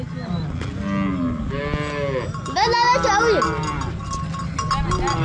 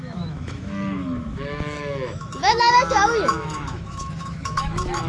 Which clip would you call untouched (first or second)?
first